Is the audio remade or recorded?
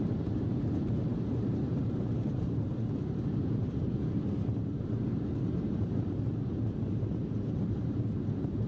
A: remade